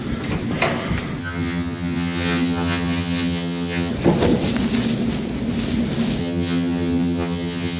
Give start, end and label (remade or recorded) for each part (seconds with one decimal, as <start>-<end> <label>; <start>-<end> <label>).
0.0-1.2 recorded; 1.2-3.9 remade; 3.9-6.2 recorded; 6.2-7.8 remade